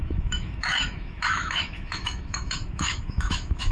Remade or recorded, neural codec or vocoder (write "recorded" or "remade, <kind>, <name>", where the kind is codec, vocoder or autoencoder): remade, autoencoder, DAC-VAE